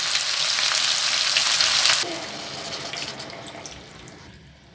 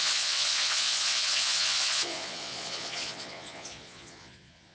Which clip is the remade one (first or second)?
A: second